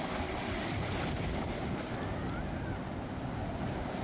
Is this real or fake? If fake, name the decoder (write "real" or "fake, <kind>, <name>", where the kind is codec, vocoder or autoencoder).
fake, vocoder, BigVGAN v2